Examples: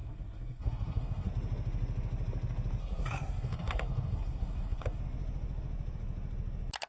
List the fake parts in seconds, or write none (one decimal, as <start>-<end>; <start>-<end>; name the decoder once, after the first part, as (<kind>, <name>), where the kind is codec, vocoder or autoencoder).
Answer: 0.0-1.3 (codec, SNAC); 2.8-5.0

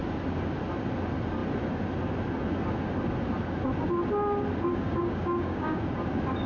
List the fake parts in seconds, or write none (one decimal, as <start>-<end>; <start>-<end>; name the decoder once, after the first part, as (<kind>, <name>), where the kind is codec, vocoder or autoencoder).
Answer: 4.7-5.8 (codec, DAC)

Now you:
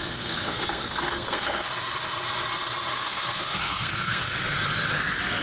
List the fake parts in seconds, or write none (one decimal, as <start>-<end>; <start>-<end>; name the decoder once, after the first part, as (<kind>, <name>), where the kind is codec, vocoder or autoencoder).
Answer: 0.0-1.7 (codec, SNAC); 2.9-4.2

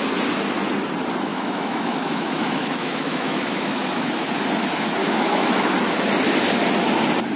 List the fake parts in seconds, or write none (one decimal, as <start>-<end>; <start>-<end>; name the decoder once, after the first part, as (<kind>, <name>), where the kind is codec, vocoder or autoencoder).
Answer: 1.3-4.3 (autoencoder, DAC-VAE); 5.0-5.7

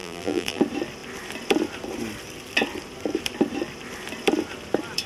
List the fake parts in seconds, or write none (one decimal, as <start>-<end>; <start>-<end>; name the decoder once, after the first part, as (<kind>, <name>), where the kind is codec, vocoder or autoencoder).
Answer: 0.0-0.6 (vocoder, BigVGAN v2)

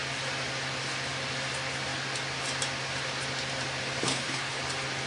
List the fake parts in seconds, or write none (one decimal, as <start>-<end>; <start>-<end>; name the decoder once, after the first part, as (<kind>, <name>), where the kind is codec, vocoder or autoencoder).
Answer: 4.1-4.6 (codec, HILCodec)

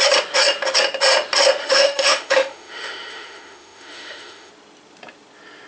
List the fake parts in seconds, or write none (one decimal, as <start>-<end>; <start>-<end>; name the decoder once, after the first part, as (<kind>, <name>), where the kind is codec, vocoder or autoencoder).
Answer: 1.6-4.5 (autoencoder, DAC-VAE)